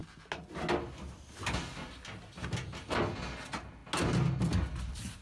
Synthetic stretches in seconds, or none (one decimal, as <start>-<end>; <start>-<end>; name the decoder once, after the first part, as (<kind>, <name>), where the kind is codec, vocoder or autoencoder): none